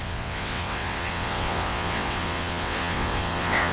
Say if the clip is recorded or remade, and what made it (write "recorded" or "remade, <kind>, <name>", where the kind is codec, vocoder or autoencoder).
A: remade, vocoder, WaveNeXt